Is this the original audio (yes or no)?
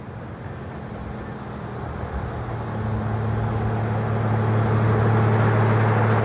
yes